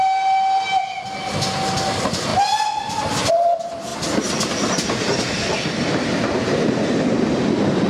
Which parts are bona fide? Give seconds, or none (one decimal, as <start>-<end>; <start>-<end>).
0.0-7.9